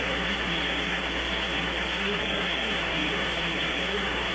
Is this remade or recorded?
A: remade